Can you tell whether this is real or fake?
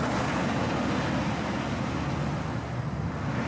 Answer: real